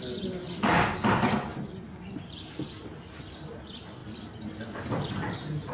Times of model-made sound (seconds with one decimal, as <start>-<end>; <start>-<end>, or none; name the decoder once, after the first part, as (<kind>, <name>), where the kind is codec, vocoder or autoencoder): 1.5-3.1 (vocoder, BigVGAN v2); 4.0-5.1